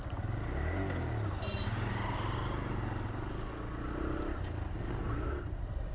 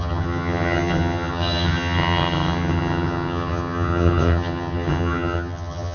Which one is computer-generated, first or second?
second